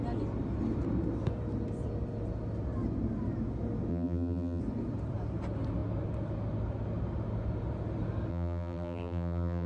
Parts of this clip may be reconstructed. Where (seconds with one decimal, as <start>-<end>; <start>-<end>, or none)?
3.9-4.6; 8.3-9.7